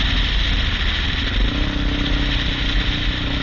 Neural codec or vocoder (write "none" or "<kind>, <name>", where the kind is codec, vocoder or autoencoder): none